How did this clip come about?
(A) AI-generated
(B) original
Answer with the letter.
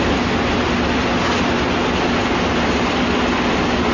B